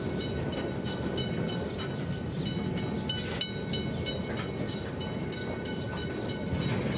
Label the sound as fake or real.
real